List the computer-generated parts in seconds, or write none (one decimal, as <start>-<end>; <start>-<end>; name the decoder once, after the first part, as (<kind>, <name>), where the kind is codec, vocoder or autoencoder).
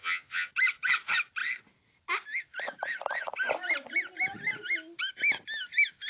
0.0-0.5 (vocoder, Vocos)